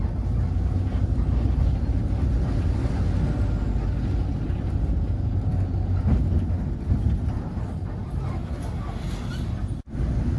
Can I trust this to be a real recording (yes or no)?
yes